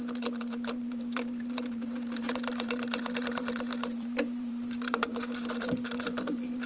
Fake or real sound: fake